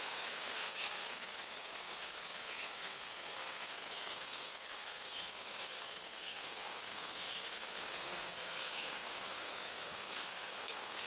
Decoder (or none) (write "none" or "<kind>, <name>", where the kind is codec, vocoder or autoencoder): codec, SNAC